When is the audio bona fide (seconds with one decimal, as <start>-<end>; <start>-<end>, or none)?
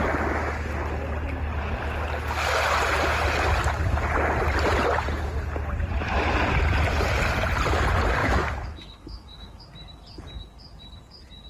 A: 0.0-8.2; 9.6-11.5